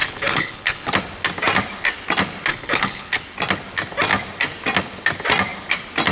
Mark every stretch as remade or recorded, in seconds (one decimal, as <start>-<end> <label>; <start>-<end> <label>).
0.0-0.9 remade; 0.9-2.5 recorded; 2.5-3.2 remade; 3.2-6.1 recorded